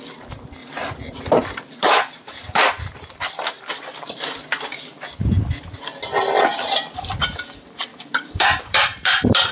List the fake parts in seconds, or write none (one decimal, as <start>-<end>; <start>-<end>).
0.6-2.6; 7.9-9.5